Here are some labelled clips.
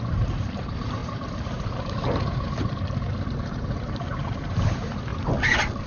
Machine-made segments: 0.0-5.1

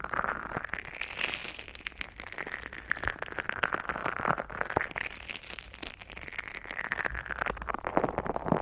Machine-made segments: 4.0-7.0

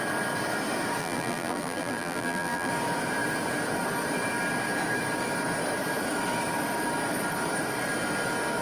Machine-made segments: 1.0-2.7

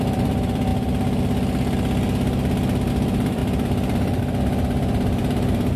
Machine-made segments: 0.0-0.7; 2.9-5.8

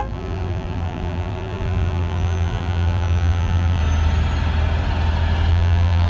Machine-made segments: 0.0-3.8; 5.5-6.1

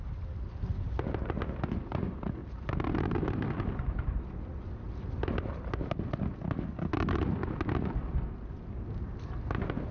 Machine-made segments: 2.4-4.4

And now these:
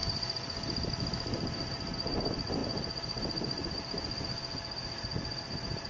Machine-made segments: 0.0-2.6